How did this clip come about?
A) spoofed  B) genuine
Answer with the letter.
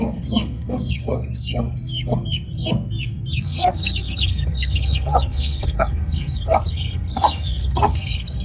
A